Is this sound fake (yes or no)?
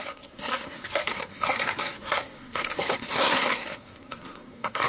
yes